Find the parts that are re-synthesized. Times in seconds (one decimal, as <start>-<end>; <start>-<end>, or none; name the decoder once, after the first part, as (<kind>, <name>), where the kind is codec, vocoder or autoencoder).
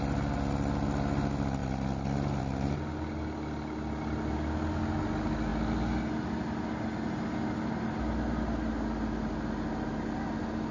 none